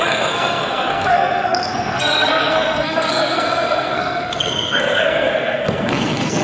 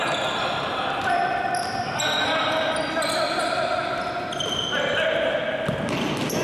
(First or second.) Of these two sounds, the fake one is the first